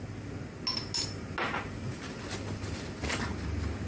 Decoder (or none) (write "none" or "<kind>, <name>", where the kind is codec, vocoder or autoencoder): none